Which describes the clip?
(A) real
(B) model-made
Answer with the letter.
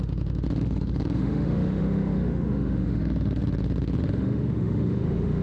B